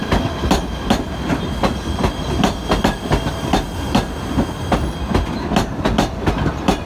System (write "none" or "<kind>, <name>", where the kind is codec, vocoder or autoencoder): none